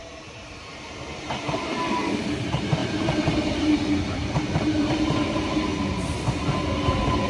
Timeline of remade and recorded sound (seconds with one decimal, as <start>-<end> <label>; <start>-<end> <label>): 0.0-5.7 remade; 5.7-7.3 recorded